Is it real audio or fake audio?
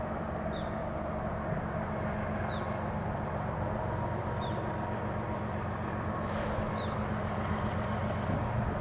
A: real